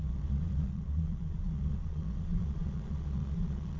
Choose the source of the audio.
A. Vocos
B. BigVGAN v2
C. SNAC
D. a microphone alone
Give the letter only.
A